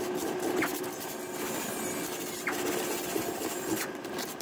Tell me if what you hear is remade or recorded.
recorded